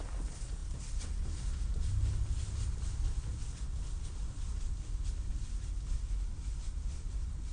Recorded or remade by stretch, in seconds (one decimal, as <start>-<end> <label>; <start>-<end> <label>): 0.0-7.5 recorded